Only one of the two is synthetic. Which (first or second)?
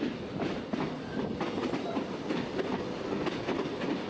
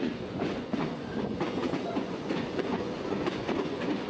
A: second